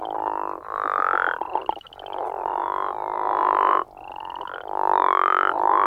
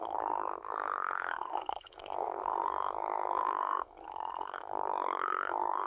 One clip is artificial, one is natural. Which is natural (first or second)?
first